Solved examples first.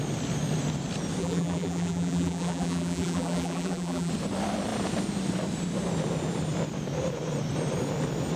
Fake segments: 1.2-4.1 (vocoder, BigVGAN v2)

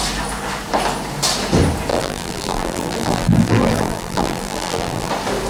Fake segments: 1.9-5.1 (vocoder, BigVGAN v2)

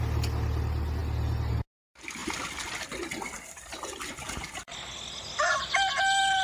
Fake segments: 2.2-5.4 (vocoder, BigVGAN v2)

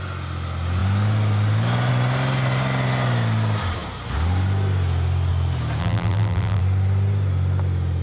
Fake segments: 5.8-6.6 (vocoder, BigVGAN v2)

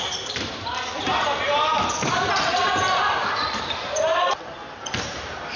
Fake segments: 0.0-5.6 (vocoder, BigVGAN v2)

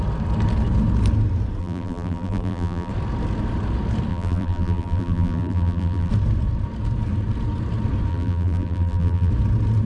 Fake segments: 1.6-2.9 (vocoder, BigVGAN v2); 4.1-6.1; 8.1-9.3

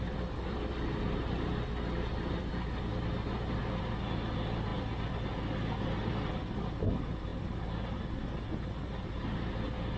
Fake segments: none